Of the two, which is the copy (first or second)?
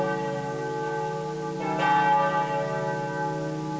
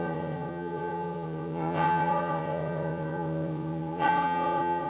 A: second